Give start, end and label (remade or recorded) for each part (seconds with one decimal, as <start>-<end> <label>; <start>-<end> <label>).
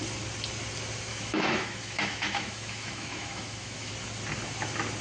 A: 0.0-1.1 recorded; 1.1-3.9 remade; 3.9-5.0 recorded